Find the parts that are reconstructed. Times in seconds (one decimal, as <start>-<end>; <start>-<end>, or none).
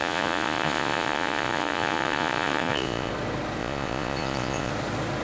0.0-3.1; 3.6-4.7